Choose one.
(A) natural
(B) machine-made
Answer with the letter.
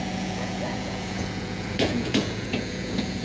B